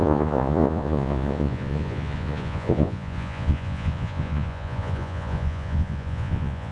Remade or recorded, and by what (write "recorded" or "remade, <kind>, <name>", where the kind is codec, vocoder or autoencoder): remade, vocoder, Vocos